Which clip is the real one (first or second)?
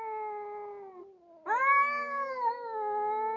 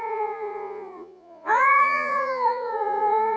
first